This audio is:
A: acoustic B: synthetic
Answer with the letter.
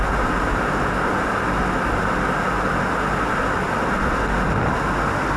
A